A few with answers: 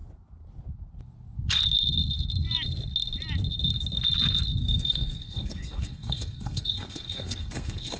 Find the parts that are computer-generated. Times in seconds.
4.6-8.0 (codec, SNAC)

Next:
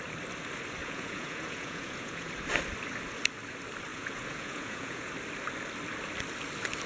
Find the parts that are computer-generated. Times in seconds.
0.8-2.3 (vocoder, Vocos); 3.9-5.1

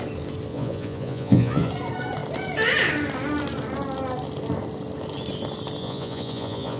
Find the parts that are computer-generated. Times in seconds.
0.5-1.7 (vocoder, Vocos); 5.8-6.8

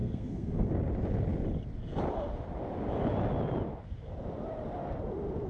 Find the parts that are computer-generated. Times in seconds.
0.0-0.7 (codec, SNAC)

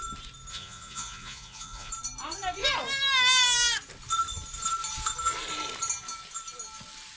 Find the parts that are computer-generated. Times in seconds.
0.5-1.9 (vocoder, Vocos)

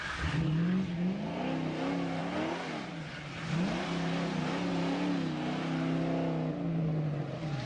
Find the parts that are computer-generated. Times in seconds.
none

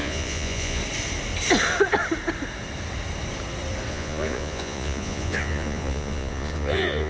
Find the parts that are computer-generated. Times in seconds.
0.0-0.8 (vocoder, Vocos); 3.9-7.1

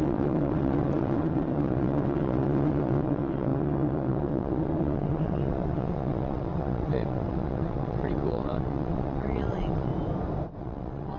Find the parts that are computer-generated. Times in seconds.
0.0-9.9 (vocoder, WaveNeXt); 10.6-11.2